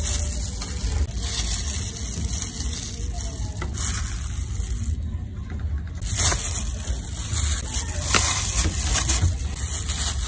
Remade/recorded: recorded